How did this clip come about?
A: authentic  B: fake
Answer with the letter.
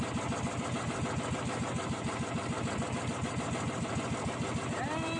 A